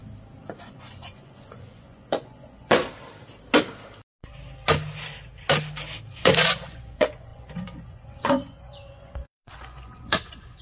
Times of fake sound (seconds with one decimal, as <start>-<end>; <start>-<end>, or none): 0.6-2.8; 6.1-10.6